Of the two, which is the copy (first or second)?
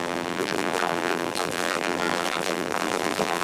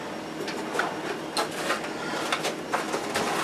first